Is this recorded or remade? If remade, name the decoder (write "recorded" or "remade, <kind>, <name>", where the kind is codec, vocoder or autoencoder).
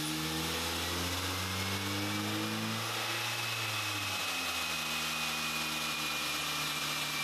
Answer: recorded